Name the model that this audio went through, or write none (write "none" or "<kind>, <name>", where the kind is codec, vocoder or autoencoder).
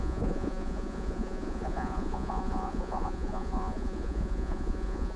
vocoder, Vocos